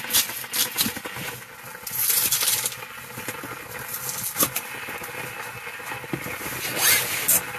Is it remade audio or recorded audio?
recorded